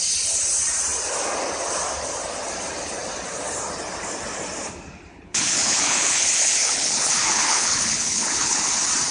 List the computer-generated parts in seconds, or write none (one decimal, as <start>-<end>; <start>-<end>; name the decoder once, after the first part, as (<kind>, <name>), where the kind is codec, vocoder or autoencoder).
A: 5.1-8.7 (codec, HILCodec)